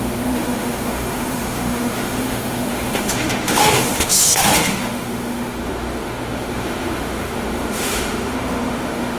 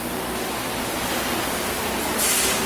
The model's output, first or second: first